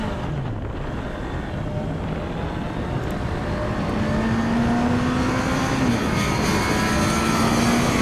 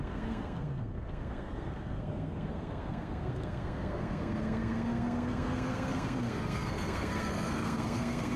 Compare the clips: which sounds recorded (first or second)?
first